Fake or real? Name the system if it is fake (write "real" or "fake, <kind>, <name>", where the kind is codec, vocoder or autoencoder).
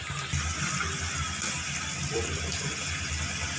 real